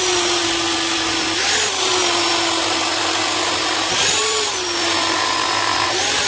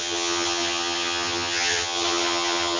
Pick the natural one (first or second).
first